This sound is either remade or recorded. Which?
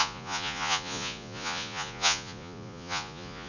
remade